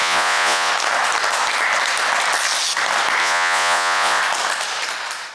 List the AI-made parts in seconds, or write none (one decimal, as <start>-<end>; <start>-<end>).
0.0-0.7; 3.2-4.2